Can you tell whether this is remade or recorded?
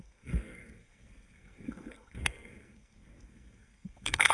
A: remade